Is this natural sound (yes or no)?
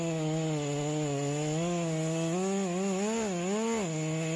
yes